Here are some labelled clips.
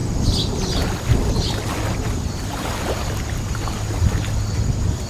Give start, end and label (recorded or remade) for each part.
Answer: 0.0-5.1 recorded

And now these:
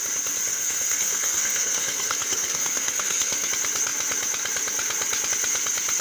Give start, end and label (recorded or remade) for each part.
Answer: 0.0-0.5 recorded; 0.5-3.5 remade; 3.5-6.0 recorded